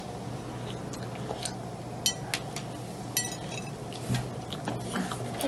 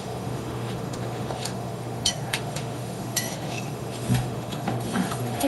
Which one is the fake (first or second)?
second